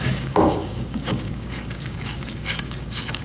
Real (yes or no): no